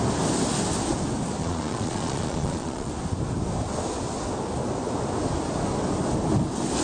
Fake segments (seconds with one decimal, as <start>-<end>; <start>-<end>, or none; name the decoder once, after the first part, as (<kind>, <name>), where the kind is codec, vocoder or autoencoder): 1.4-2.9 (vocoder, Vocos)